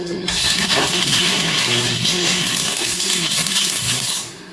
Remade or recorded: remade